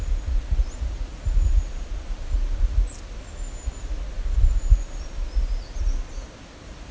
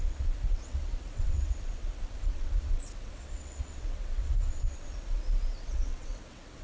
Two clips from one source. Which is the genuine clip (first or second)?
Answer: first